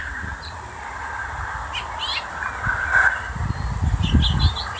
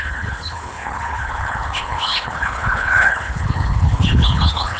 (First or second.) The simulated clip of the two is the second